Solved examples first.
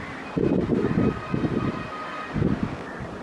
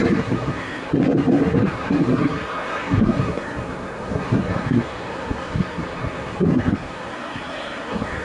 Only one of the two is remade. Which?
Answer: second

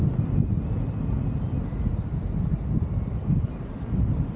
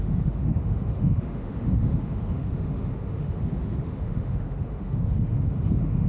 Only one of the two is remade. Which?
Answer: second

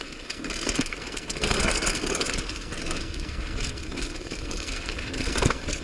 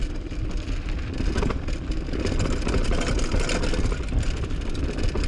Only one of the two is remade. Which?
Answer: first